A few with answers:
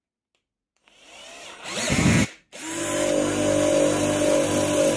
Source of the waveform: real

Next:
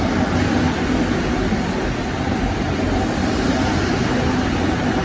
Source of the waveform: real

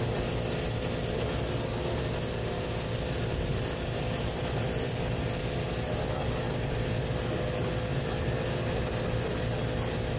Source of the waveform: real